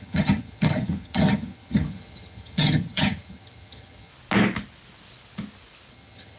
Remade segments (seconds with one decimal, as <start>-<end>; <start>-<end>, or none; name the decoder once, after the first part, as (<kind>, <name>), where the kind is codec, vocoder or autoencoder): 0.0-4.1 (vocoder, HiFi-GAN); 5.9-6.4